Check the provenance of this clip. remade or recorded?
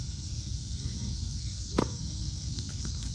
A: remade